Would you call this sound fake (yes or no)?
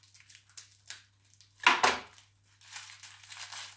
no